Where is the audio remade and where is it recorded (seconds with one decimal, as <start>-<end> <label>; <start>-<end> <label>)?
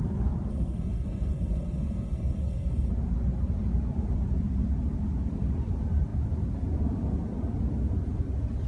0.0-0.5 recorded; 0.5-2.9 remade; 2.9-8.7 recorded